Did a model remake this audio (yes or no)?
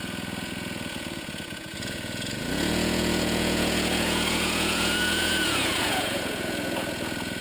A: yes